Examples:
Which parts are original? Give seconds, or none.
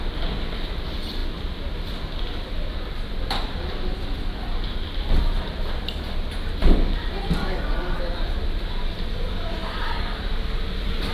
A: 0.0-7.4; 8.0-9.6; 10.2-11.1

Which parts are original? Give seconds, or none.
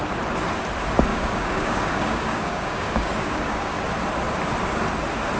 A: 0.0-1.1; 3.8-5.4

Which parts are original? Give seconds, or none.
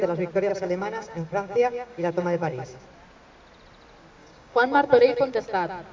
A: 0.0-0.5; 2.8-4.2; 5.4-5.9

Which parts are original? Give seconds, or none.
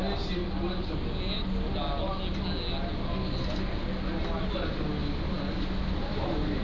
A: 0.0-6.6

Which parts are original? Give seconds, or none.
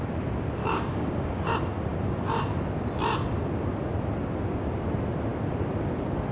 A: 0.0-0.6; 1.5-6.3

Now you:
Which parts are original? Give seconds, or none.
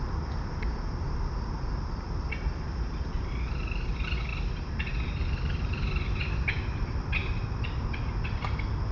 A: 0.0-8.9